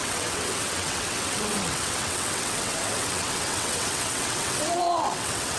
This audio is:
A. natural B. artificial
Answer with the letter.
B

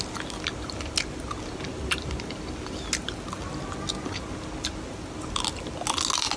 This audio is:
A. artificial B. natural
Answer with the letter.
B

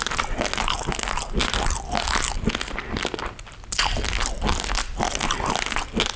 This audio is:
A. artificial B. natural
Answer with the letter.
B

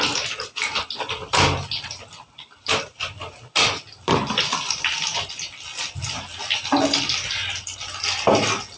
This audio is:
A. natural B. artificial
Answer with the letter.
A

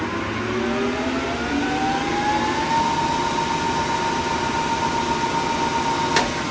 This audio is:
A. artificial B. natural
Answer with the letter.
B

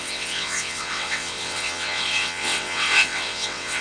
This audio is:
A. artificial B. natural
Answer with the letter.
A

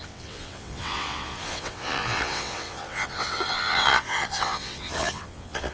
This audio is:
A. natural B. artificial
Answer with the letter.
B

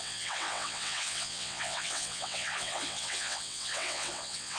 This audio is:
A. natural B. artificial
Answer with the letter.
B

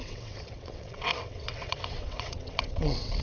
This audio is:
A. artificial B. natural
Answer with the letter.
A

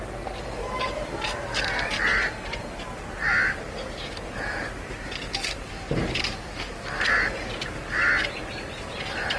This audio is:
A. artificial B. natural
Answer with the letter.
B